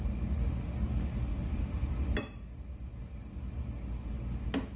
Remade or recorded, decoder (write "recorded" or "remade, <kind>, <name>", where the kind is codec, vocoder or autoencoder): recorded